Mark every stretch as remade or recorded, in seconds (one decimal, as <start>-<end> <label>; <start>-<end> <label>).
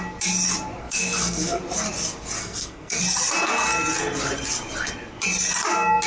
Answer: 0.0-0.8 recorded; 0.8-1.6 remade; 1.6-2.4 recorded; 2.4-3.0 remade; 3.0-6.1 recorded